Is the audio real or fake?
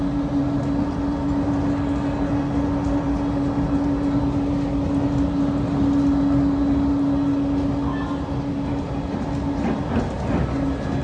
real